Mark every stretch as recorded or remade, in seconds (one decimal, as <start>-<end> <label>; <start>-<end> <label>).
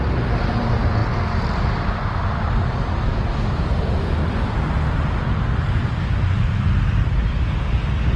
0.0-1.0 remade; 1.0-2.2 recorded; 2.2-7.2 remade; 7.2-8.2 recorded